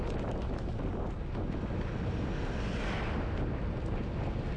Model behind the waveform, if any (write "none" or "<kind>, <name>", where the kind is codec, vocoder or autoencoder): none